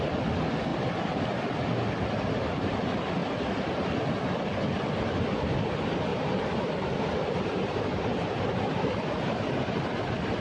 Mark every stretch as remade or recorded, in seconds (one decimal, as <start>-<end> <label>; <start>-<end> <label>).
0.0-0.7 recorded; 0.7-1.4 remade; 1.4-3.2 recorded; 3.2-3.9 remade; 3.9-6.1 recorded; 6.1-9.8 remade; 9.8-10.4 recorded